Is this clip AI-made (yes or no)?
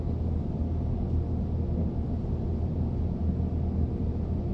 no